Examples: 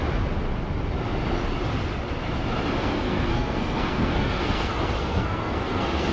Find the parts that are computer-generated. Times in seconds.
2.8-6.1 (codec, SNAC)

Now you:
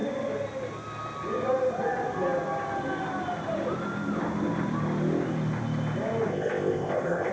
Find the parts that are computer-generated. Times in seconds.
6.3-7.3 (codec, ZipCodec)

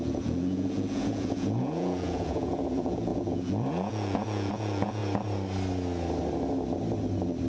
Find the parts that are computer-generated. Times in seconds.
0.0-5.0 (vocoder, Vocos)

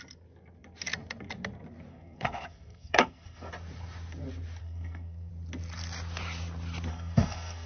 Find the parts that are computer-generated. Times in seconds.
1.9-3.5 (codec, SNAC); 4.6-5.3; 6.9-7.7